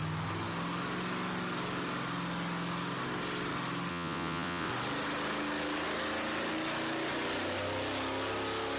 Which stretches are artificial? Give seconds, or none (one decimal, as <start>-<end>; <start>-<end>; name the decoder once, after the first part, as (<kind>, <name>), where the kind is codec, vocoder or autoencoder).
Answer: 3.9-4.7 (vocoder, WaveNeXt)